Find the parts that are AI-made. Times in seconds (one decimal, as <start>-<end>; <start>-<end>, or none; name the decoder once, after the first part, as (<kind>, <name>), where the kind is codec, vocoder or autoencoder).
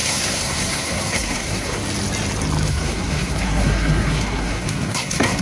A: 0.0-1.8 (codec, SNAC); 2.7-5.4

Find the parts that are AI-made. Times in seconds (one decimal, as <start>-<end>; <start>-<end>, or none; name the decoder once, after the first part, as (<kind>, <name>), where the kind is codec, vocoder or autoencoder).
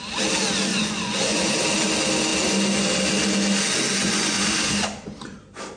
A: 0.7-1.5 (vocoder, Vocos); 4.0-5.1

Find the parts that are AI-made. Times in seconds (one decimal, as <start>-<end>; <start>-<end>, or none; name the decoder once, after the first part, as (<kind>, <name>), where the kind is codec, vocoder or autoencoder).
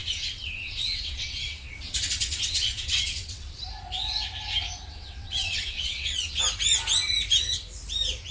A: 0.0-3.6 (vocoder, WaveNeXt); 4.9-6.4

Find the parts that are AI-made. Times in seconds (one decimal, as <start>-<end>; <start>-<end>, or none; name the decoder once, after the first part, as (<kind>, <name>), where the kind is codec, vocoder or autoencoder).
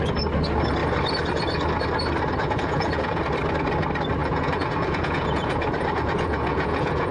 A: 2.4-3.2 (vocoder, Vocos); 4.2-7.1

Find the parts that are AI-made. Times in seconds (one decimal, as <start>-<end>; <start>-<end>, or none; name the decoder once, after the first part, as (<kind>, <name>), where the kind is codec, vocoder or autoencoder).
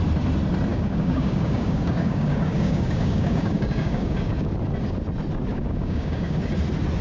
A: 0.7-4.5 (codec, DAC); 5.5-6.5